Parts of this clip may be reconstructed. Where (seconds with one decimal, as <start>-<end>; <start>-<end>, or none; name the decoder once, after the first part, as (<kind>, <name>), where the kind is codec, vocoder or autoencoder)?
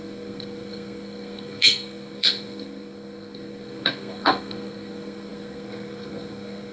0.0-6.7 (codec, SNAC)